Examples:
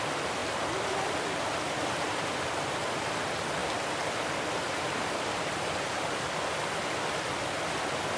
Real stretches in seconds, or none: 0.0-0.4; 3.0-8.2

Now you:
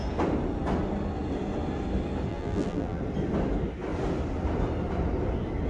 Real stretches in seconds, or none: 0.0-2.3; 3.0-5.7